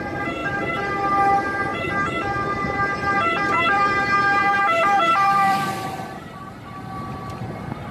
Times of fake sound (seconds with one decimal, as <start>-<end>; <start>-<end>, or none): 0.4-0.9; 1.7-6.4